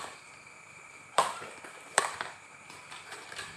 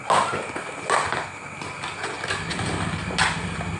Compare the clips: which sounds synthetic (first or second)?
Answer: first